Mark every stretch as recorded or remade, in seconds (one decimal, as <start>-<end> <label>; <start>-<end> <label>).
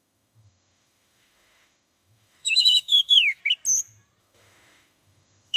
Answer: 0.0-3.4 remade; 3.4-4.2 recorded; 4.2-5.6 remade